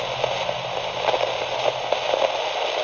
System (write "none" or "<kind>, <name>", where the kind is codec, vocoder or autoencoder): none